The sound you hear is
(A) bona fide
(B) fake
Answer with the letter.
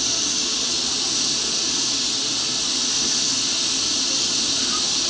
A